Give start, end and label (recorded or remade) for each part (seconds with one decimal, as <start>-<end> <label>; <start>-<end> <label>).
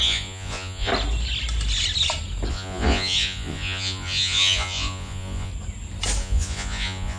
0.0-0.9 remade; 0.9-2.5 recorded; 2.5-5.5 remade; 5.5-6.2 recorded; 6.2-7.2 remade